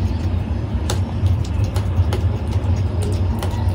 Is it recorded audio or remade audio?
remade